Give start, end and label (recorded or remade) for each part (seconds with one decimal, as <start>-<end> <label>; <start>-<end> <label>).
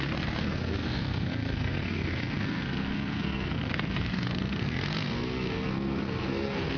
0.0-6.8 remade